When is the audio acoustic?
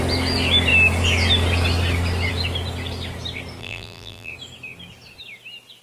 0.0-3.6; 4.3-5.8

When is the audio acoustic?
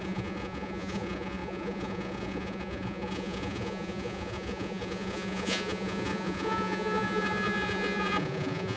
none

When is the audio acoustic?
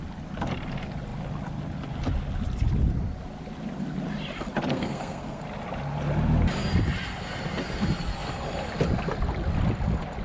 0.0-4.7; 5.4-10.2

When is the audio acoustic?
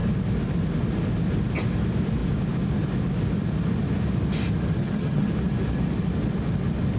0.0-4.8; 5.3-7.0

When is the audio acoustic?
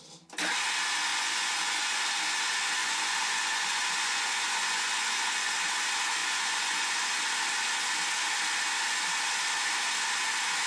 0.0-1.1; 2.0-2.8; 5.5-6.2; 7.1-10.7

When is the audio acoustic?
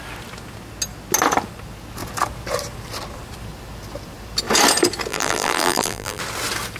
0.0-5.1; 6.2-6.8